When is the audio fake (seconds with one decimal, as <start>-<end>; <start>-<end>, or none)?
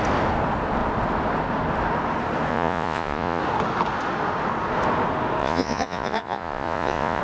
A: 2.5-3.4; 5.4-7.2